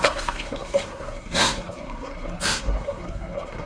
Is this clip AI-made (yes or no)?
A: yes